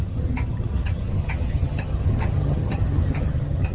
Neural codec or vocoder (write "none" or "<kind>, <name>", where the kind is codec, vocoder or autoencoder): vocoder, HiFi-GAN